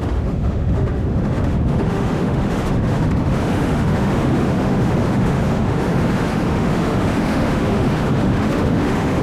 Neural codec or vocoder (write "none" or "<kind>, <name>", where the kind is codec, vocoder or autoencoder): autoencoder, DAC-VAE